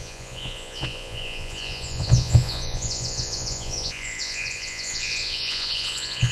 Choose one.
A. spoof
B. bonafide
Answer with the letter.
A